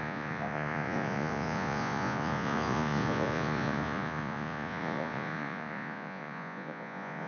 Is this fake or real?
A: fake